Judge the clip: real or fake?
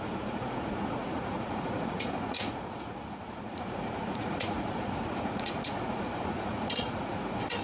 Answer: fake